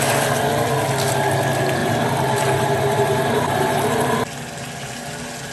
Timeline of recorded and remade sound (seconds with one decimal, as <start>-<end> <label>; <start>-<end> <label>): 0.0-1.8 recorded; 1.8-4.2 remade; 4.2-5.5 recorded